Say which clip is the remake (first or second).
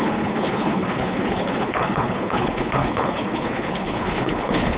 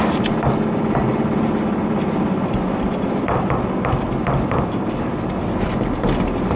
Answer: first